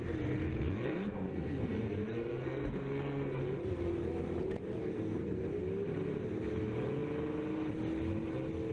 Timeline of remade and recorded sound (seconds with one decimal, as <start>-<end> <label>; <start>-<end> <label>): 0.0-0.4 recorded; 0.4-3.4 remade; 3.4-4.8 recorded; 4.8-5.6 remade; 5.6-8.7 recorded